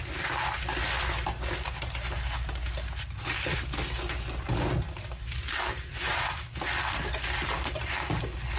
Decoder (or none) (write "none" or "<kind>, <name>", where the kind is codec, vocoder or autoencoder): none